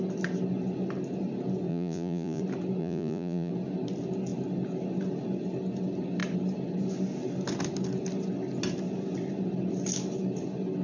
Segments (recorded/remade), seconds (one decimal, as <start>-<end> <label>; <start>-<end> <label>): 0.0-1.7 recorded; 1.7-2.4 remade; 2.4-2.8 recorded; 2.8-3.5 remade; 3.5-10.8 recorded